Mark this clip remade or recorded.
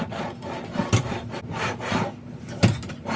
recorded